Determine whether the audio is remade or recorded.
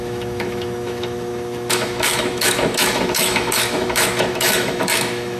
remade